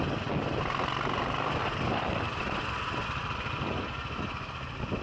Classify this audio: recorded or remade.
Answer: recorded